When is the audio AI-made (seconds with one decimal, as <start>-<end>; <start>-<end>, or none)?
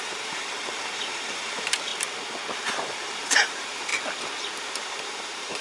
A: 0.0-1.9; 2.6-3.9; 4.6-5.6